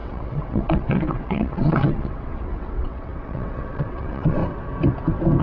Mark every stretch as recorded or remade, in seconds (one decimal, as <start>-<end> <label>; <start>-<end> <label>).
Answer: 0.0-4.4 remade; 4.4-5.4 recorded